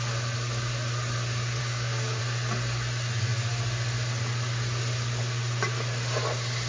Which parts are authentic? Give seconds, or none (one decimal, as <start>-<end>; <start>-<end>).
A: 0.0-1.6; 2.2-6.7